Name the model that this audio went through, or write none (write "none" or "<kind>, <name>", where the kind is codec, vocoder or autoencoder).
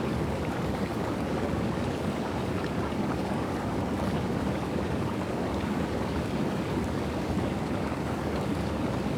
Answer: codec, DAC